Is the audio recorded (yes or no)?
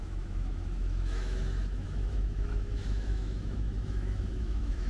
no